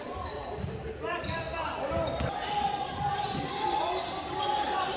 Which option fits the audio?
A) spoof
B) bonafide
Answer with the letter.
B